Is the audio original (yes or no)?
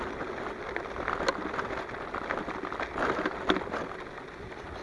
yes